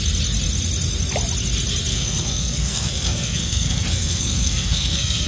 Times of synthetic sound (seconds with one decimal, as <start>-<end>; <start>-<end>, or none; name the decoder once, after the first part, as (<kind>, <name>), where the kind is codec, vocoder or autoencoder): 1.9-5.3 (codec, SNAC)

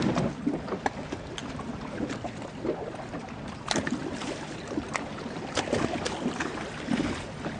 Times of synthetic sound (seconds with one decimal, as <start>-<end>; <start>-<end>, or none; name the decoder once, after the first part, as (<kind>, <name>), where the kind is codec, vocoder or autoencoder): 4.0-5.0 (vocoder, BigVGAN v2)

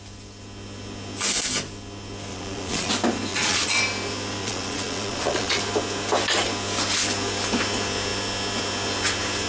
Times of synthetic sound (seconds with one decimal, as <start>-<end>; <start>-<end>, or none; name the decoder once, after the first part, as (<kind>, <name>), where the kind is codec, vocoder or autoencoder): 2.3-2.9 (vocoder, Vocos); 3.3-3.8; 4.4-5.6

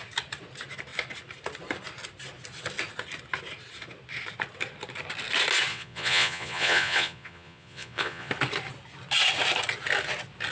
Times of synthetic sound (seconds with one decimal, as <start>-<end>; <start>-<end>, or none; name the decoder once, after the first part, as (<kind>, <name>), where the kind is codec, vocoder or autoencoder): 5.7-8.3 (vocoder, Vocos)

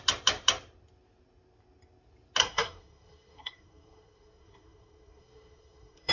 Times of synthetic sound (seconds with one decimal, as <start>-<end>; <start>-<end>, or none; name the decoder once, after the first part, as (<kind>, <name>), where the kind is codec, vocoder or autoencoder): 2.4-6.1 (codec, SNAC)

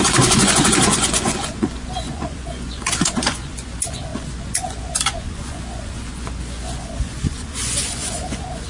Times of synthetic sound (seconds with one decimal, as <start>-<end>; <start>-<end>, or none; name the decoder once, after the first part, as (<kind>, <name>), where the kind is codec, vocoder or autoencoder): 0.0-8.7 (vocoder, Vocos)

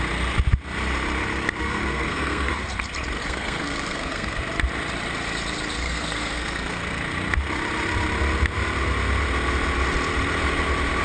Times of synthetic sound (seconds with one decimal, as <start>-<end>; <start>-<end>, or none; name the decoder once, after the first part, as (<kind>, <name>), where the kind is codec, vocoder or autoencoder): 1.6-2.5 (codec, SNAC); 3.2-4.4; 5.8-7.0